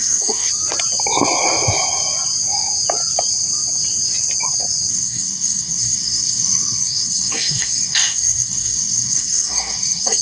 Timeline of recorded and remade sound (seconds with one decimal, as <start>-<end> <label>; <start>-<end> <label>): 0.0-0.5 remade; 0.5-4.9 recorded; 4.9-10.2 remade